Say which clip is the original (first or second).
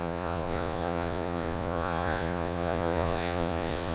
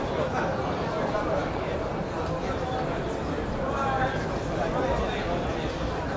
second